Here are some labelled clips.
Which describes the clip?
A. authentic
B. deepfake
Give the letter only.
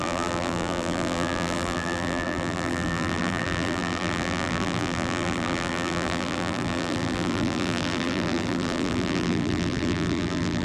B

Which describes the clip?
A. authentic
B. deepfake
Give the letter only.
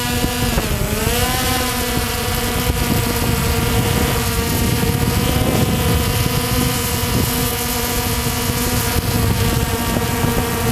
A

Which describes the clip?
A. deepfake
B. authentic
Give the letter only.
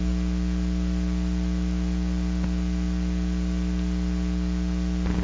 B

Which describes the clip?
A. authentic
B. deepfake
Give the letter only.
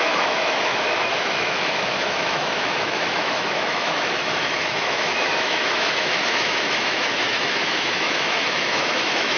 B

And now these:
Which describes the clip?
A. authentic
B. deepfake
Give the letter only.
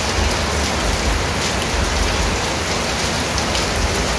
A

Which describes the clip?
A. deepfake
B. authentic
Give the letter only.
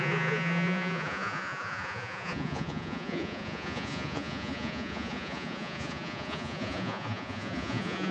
A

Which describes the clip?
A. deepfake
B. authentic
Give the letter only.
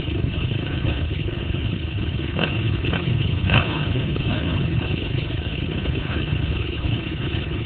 A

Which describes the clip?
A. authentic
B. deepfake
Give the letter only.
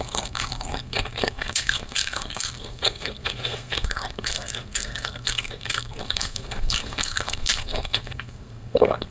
B